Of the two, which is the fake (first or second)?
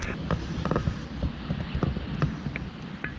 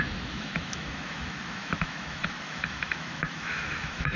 second